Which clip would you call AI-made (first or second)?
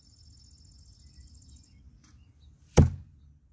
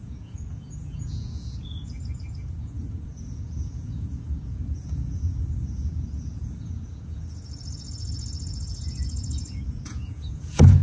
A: second